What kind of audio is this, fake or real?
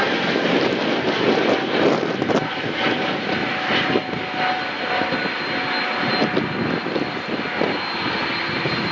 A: real